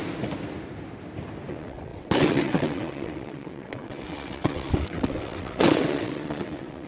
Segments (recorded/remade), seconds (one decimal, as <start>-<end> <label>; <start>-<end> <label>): 0.0-1.5 recorded; 1.5-6.9 remade